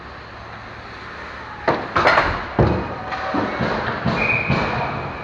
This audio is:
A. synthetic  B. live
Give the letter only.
B